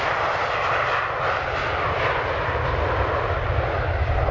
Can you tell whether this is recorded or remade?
recorded